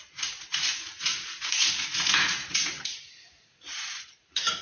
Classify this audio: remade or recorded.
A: remade